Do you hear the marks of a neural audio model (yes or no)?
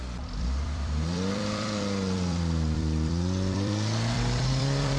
yes